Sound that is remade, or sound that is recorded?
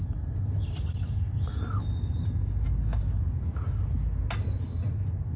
recorded